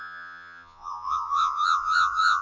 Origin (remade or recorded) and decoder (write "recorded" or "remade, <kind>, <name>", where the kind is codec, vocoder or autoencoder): remade, vocoder, Vocos